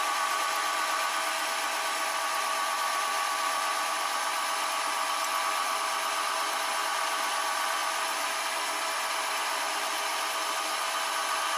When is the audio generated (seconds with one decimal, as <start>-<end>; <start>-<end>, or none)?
none